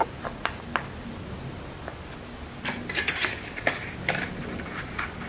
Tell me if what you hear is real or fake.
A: real